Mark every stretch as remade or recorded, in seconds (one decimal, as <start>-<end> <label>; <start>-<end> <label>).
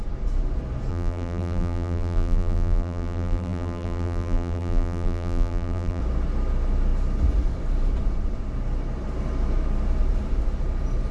0.0-0.9 recorded; 0.9-6.0 remade; 6.0-11.1 recorded